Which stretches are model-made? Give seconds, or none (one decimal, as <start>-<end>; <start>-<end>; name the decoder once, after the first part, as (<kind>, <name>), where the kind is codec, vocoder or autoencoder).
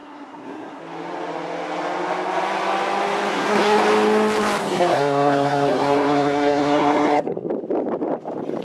0.0-0.8 (codec, SNAC); 3.3-3.8; 4.6-7.5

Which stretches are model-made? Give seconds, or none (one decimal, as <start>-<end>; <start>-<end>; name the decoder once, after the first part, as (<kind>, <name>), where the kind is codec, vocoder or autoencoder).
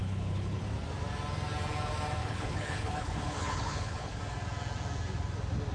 0.0-0.6 (codec, HILCodec); 2.2-4.2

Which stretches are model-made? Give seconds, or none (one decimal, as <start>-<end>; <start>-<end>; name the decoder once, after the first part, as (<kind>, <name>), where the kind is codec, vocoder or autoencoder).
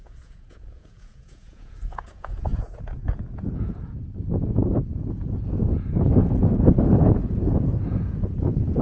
0.0-6.2 (vocoder, Vocos); 7.0-8.8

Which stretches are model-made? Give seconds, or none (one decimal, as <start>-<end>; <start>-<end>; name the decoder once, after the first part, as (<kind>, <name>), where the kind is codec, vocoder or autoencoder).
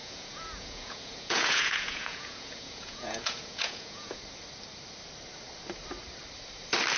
0.0-4.2 (vocoder, Vocos)